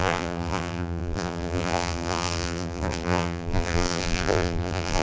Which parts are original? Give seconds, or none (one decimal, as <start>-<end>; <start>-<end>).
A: none